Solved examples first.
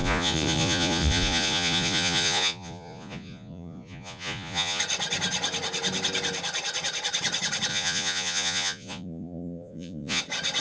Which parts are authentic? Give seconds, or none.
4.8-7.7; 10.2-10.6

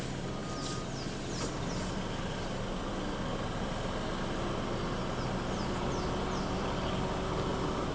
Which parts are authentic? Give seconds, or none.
0.0-7.9

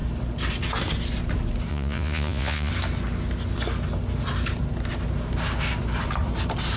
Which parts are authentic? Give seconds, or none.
0.0-1.7; 2.7-6.8

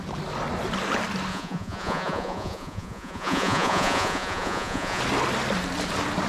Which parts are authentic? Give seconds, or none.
0.0-1.3; 5.0-6.3